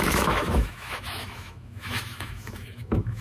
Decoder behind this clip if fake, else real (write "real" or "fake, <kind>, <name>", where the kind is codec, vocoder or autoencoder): fake, autoencoder, DAC-VAE